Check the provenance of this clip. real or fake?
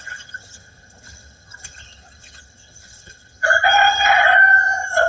fake